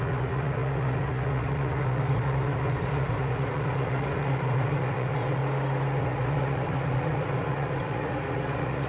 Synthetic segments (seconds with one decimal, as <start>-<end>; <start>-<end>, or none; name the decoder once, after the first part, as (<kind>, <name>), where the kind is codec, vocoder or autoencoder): 0.0-5.4 (vocoder, Vocos); 6.0-8.9

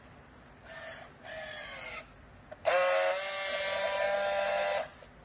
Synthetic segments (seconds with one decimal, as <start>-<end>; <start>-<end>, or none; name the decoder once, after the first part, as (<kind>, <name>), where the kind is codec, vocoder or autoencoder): none

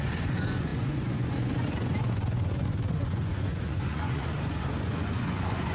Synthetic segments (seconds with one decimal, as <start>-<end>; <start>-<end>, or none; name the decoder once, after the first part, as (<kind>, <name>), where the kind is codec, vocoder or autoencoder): 0.0-5.7 (vocoder, Vocos)

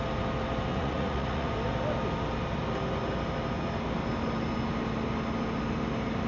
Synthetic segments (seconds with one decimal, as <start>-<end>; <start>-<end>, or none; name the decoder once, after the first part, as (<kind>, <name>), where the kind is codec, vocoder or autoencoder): 0.7-1.5 (vocoder, Vocos)

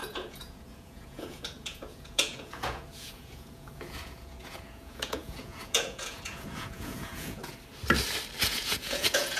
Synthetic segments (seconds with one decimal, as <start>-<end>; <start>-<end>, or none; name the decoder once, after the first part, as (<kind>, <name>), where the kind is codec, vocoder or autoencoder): 0.0-7.4 (vocoder, Vocos); 8.4-9.4

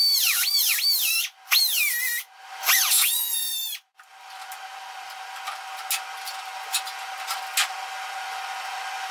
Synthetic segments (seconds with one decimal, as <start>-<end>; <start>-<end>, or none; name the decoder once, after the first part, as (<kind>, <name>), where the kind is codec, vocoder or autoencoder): 2.9-3.5 (vocoder, Vocos)

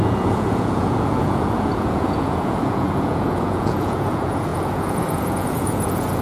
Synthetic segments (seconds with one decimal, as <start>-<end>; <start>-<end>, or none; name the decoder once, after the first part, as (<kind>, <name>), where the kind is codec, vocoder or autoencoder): 0.0-6.2 (vocoder, Vocos)

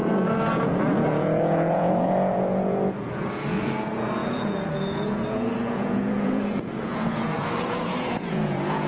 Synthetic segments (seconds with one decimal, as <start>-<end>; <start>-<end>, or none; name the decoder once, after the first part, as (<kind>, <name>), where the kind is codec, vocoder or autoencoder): 0.0-8.9 (vocoder, Vocos)